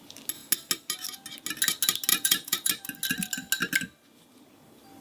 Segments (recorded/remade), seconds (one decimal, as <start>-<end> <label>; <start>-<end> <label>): 0.0-2.1 recorded; 2.1-2.7 remade; 2.7-5.0 recorded